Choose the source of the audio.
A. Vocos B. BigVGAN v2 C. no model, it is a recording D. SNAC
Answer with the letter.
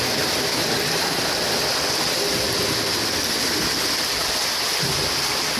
C